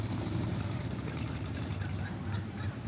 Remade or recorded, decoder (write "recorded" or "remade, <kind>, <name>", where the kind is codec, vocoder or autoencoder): remade, vocoder, BigVGAN v2